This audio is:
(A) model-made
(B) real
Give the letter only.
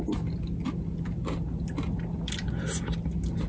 B